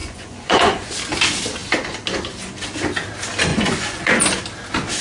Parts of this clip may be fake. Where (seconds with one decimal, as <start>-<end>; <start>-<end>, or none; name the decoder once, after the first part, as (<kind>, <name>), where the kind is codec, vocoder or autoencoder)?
0.0-0.9 (vocoder, Vocos); 3.5-4.2